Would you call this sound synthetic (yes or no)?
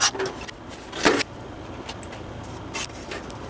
no